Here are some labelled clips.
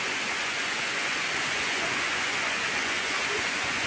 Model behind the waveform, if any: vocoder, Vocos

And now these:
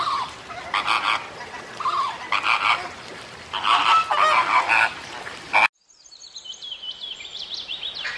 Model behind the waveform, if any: none